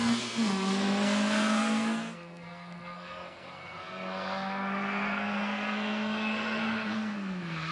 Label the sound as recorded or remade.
remade